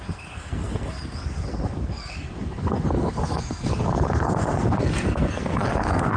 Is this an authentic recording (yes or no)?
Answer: no